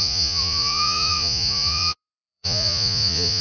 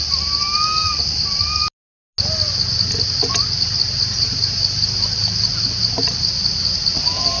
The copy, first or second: first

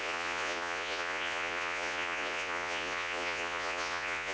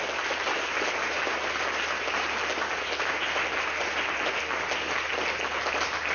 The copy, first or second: first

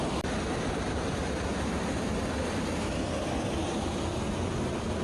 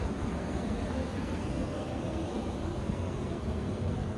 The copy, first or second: second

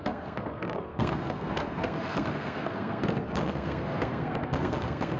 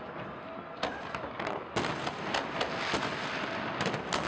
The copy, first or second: first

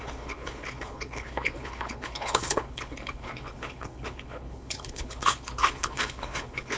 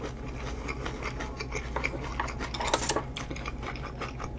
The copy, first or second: first